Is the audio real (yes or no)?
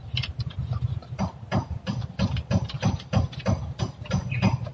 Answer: yes